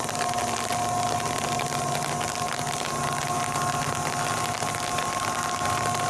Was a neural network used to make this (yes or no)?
no